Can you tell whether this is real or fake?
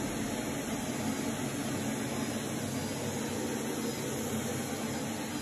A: real